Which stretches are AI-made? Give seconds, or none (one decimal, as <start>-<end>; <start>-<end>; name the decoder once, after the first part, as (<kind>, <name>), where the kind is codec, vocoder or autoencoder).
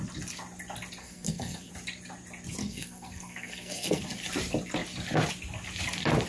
1.0-1.7 (codec, SNAC); 2.6-4.0